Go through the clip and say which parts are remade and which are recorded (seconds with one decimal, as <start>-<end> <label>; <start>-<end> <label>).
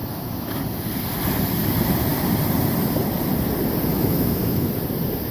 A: 0.0-0.6 remade; 0.6-3.9 recorded; 3.9-4.7 remade; 4.7-5.3 recorded